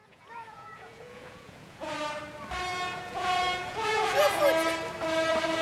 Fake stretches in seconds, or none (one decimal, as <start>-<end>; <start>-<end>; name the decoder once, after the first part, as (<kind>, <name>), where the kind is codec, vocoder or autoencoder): 0.0-1.9 (vocoder, Vocos); 2.7-4.4